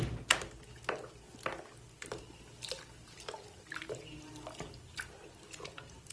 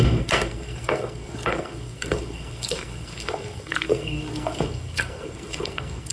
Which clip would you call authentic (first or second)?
first